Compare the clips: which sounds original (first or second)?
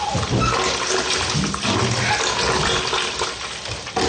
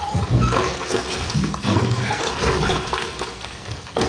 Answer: first